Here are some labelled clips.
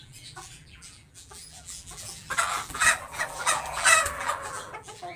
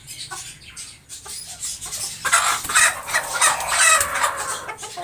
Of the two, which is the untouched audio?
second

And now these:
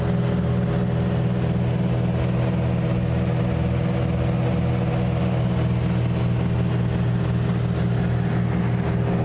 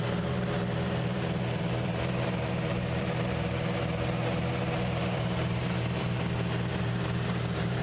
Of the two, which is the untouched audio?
first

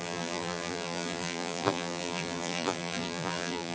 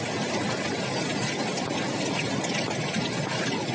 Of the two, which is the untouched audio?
second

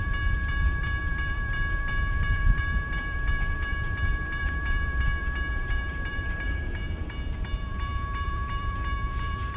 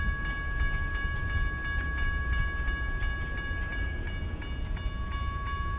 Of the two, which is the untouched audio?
second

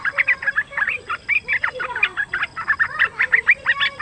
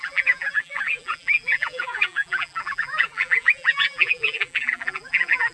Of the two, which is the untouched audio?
first